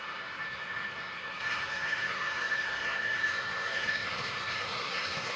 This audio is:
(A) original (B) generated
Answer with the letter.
B